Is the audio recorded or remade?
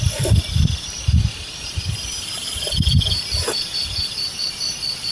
recorded